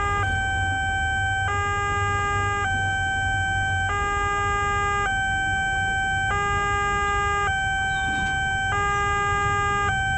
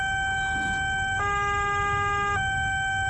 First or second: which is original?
first